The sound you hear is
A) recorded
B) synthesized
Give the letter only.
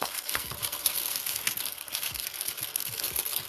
B